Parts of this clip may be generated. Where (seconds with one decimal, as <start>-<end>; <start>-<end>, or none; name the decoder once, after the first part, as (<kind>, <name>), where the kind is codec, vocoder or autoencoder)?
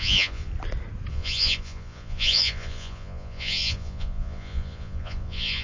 0.0-0.5 (vocoder, Vocos); 1.1-5.6